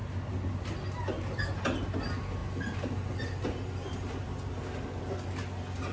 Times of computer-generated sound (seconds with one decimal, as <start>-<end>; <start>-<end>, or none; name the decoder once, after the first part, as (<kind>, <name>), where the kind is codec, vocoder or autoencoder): none